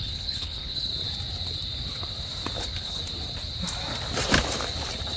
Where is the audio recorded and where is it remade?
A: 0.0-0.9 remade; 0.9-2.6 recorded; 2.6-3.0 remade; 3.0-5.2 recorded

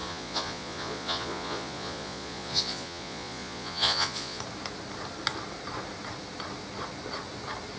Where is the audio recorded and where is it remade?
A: 0.0-4.4 remade; 4.4-7.8 recorded